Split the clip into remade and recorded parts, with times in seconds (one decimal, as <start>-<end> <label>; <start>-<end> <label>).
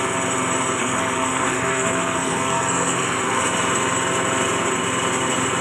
0.0-0.8 recorded; 0.8-3.4 remade; 3.4-5.6 recorded